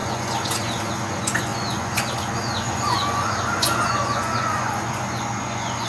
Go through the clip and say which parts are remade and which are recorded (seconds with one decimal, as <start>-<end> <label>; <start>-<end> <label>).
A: 0.0-5.9 remade